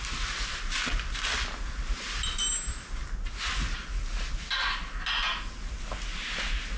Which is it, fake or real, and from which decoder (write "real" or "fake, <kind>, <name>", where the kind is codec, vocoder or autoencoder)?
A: real